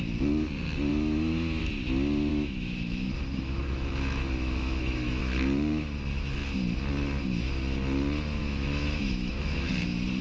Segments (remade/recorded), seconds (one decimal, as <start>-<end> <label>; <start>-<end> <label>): 0.0-0.9 recorded; 0.9-1.6 remade; 1.6-2.3 recorded; 2.3-5.2 remade; 5.2-8.4 recorded; 8.4-9.7 remade; 9.7-10.2 recorded